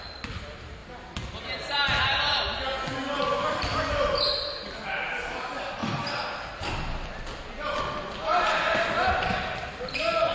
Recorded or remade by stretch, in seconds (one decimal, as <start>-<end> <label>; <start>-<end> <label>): 0.0-10.3 recorded